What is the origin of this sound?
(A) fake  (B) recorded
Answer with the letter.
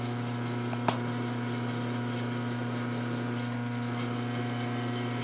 B